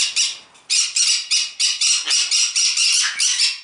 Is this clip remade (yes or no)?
no